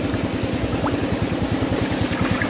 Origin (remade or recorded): recorded